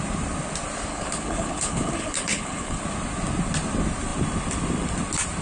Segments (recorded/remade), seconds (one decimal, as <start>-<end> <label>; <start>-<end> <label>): 0.0-0.9 recorded; 0.9-2.8 remade; 2.8-5.4 recorded